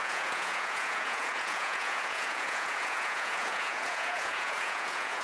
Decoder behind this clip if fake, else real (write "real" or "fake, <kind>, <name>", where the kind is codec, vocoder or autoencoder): fake, vocoder, Vocos